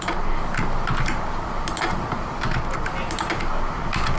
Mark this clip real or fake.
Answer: real